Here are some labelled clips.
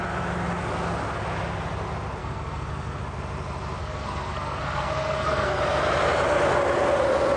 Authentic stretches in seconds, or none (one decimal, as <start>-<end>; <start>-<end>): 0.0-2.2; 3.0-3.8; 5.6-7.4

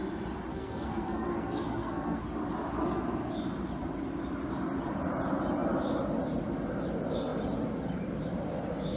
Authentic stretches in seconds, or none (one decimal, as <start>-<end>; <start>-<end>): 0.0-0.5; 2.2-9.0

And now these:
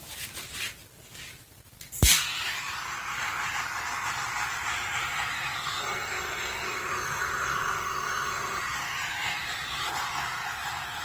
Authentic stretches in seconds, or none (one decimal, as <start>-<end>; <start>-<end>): 0.0-5.8; 8.6-11.0